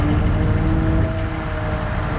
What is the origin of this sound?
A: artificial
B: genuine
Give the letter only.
B